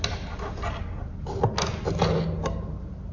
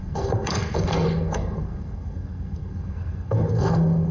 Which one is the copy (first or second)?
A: second